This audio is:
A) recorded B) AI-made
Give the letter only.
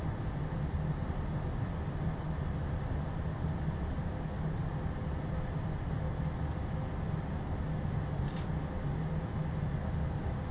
A